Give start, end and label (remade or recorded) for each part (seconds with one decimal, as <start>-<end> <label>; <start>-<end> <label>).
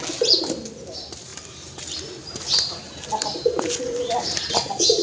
0.0-5.0 recorded